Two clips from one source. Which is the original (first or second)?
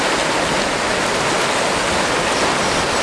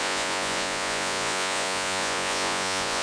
first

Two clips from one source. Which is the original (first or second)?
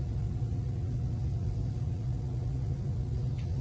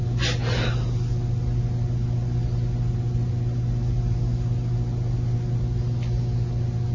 second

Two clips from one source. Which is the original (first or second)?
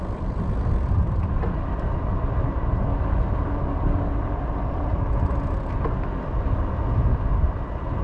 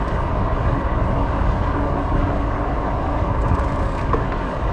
first